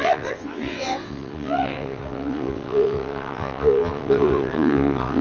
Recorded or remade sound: remade